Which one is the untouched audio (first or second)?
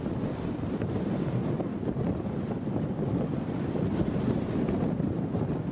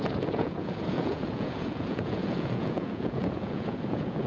first